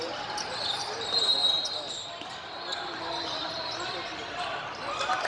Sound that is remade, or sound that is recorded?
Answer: recorded